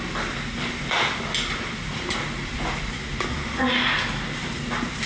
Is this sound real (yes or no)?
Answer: yes